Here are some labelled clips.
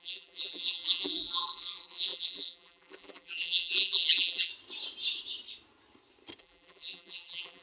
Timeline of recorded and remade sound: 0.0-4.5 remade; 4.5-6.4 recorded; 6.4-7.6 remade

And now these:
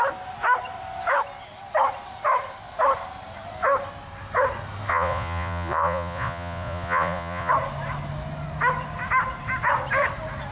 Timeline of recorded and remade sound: 0.0-4.9 recorded; 4.9-7.5 remade; 7.5-10.5 recorded

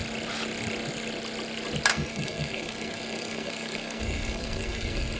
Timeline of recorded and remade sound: 0.0-1.9 recorded; 1.9-5.2 remade

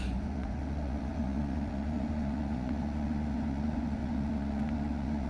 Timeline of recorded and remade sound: 0.0-5.3 remade

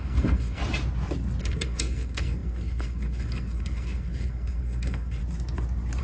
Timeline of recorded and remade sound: 0.0-0.6 remade; 0.6-1.4 recorded; 1.4-5.2 remade; 5.2-6.0 recorded

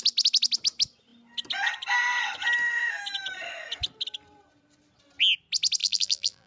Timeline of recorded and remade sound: 0.0-5.8 recorded; 5.8-6.5 remade

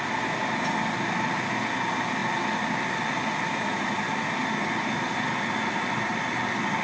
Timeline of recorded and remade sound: 0.0-6.8 recorded

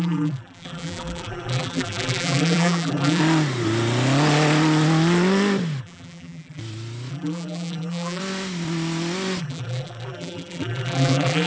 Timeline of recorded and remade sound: 0.0-3.2 remade; 3.2-5.8 recorded; 5.8-6.6 remade; 6.6-7.1 recorded; 7.1-8.2 remade; 8.2-9.4 recorded; 9.4-11.5 remade